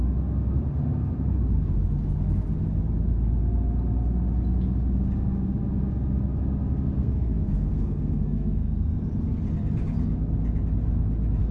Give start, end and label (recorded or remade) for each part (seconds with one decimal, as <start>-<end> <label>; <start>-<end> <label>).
0.0-7.0 recorded; 7.0-9.0 remade; 9.0-11.5 recorded